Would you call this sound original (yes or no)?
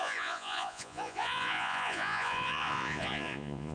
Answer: no